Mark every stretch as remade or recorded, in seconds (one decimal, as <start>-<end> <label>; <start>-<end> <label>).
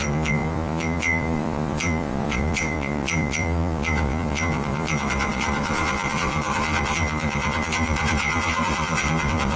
0.0-9.6 remade